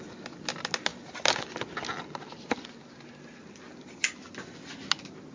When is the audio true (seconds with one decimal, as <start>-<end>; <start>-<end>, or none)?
0.0-5.3